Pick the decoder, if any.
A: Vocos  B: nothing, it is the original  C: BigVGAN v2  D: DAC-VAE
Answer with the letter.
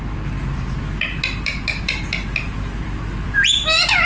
B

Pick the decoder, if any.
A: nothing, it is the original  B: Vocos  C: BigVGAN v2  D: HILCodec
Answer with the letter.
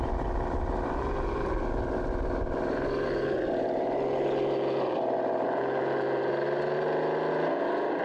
A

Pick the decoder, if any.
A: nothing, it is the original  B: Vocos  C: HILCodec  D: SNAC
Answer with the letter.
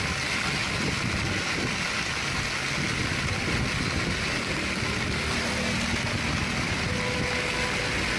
A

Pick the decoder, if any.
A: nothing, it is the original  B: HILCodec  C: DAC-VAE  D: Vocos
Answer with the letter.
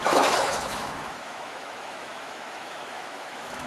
C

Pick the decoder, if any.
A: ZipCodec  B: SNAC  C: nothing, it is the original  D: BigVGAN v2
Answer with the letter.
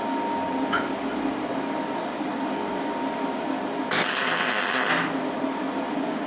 C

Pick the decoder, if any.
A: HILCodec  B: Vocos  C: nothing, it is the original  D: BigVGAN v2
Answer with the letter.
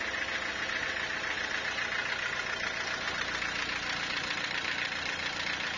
C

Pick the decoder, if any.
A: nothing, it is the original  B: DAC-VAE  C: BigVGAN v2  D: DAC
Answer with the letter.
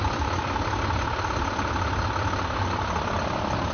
A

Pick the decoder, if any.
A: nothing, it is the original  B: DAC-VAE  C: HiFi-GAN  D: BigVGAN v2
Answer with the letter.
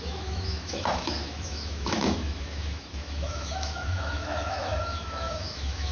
B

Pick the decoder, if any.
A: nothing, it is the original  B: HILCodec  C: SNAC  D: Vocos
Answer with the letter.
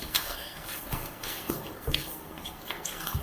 C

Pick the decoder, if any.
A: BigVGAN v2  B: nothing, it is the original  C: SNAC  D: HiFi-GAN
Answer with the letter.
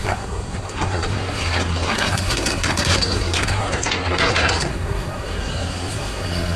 C